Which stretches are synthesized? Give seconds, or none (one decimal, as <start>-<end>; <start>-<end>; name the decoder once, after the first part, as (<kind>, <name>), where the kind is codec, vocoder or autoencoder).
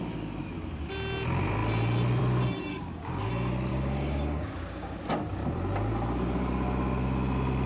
2.7-3.3 (codec, DAC); 3.7-5.0